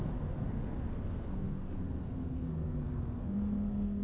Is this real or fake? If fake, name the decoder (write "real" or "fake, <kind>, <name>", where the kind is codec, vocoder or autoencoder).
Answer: fake, codec, SNAC